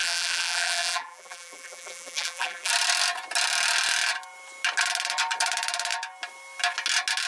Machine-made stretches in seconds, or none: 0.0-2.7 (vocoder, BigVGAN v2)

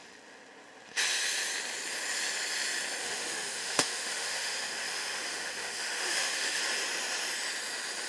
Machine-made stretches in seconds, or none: 3.0-6.6 (autoencoder, DAC-VAE)